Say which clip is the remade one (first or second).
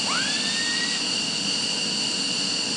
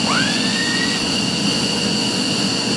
second